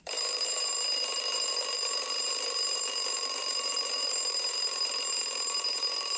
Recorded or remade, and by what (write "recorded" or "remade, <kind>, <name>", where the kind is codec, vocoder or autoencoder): remade, vocoder, BigVGAN v2